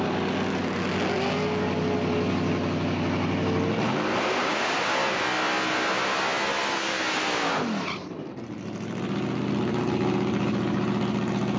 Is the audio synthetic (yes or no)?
no